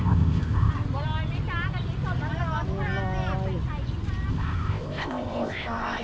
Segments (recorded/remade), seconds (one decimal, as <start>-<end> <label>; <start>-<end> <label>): 0.0-0.7 remade; 0.7-4.3 recorded; 4.3-6.0 remade